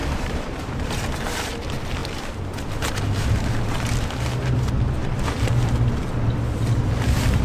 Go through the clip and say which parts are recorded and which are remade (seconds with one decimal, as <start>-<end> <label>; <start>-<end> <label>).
0.0-0.6 remade; 0.6-5.0 recorded; 5.0-5.6 remade; 5.6-7.4 recorded